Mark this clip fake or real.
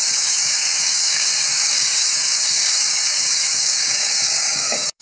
fake